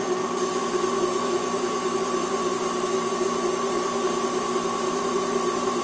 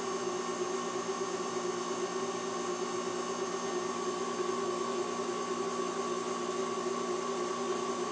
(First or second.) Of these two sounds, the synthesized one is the first